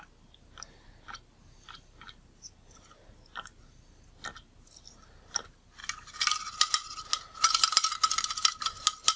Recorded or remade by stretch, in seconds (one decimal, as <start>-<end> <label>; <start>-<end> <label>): 0.0-9.2 recorded